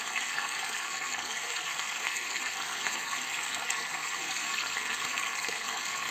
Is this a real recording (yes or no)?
no